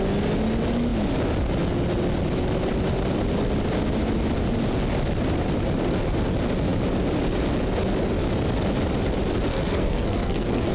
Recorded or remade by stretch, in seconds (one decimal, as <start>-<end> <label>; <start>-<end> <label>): 0.0-9.5 recorded; 9.5-10.7 remade